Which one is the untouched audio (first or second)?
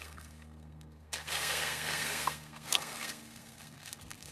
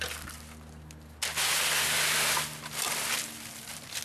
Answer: second